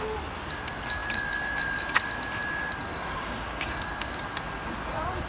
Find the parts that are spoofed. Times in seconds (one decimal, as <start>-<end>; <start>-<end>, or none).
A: 2.9-3.8